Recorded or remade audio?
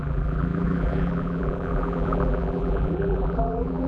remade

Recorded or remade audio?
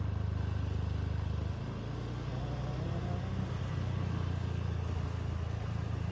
recorded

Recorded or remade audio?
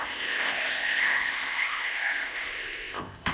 remade